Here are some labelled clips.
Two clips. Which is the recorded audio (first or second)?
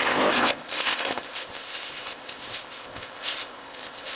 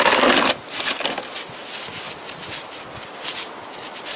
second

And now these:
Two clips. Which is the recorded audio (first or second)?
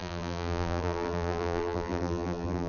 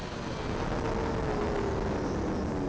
second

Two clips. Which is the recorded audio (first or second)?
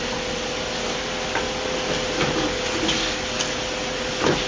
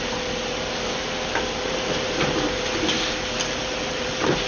first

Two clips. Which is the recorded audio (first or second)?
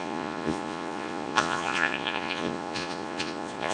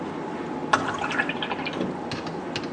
second